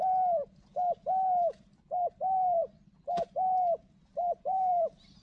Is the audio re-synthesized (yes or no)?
yes